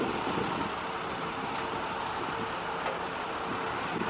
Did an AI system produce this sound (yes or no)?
no